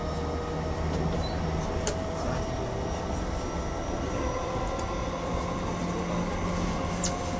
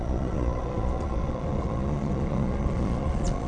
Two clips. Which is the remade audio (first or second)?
second